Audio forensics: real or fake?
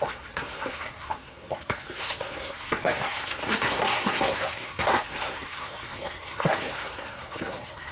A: fake